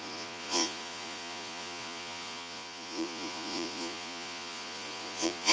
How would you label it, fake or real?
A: fake